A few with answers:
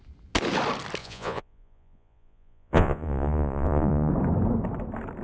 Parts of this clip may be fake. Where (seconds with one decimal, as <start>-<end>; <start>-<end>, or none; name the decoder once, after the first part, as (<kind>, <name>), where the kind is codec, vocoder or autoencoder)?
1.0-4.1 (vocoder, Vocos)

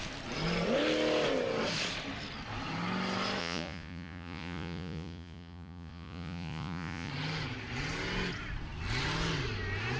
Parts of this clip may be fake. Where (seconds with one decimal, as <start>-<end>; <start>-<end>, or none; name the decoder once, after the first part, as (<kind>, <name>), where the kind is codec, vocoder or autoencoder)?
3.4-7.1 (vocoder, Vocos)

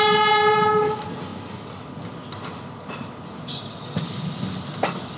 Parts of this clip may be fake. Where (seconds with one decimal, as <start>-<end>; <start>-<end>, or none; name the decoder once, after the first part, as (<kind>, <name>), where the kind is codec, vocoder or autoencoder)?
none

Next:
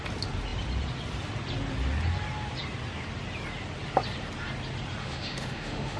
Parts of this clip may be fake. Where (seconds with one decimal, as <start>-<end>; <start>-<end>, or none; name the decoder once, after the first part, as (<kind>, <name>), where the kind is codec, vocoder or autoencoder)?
5.0-6.0 (autoencoder, DAC-VAE)

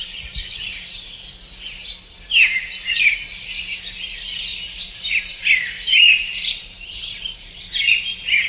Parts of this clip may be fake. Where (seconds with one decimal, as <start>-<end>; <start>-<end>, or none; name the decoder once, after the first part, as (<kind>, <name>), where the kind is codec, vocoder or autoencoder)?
4.5-5.2 (vocoder, BigVGAN v2); 5.9-7.6

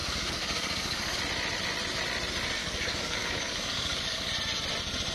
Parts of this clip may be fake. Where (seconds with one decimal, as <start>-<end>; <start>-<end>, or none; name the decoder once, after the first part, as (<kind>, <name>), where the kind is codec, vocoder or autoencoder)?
0.0-1.2 (codec, DAC); 2.6-4.3

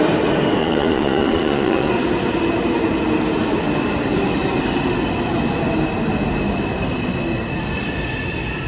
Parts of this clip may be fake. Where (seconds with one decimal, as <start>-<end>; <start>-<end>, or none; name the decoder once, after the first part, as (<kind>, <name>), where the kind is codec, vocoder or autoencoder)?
0.6-1.9 (vocoder, Vocos)